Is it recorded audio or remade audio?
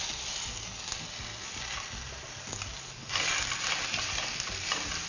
recorded